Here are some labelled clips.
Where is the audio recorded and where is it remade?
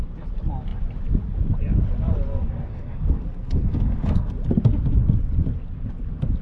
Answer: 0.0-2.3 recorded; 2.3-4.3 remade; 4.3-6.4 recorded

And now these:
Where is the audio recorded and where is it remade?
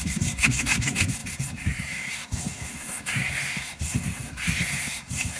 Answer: 0.0-5.4 remade